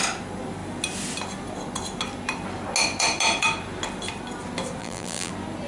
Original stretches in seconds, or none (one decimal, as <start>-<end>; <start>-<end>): 0.0-4.8; 5.3-5.7